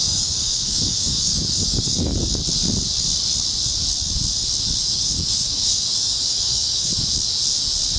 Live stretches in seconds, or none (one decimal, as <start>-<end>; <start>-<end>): 2.1-4.8; 6.9-8.0